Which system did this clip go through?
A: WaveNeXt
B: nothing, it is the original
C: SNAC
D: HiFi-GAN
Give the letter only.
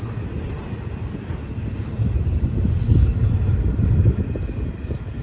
B